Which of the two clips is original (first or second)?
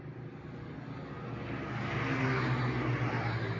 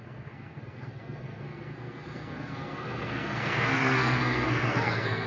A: first